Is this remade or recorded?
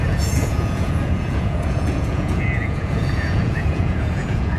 remade